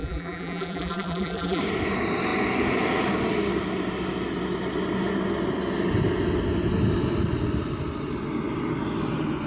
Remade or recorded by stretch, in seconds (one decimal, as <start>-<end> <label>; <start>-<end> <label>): 0.0-1.6 remade; 1.6-9.5 recorded